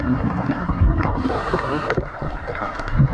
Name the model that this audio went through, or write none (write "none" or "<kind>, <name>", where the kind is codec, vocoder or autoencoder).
codec, SNAC